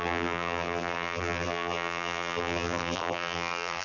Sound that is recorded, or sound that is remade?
remade